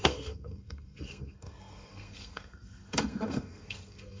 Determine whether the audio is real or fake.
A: fake